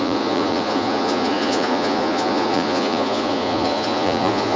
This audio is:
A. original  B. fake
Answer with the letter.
B